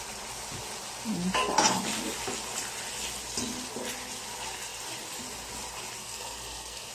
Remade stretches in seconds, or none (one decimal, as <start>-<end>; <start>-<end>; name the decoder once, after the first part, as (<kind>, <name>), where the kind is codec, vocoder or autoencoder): 6.0-6.9 (codec, SNAC)